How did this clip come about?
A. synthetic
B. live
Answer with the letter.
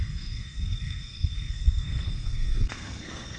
A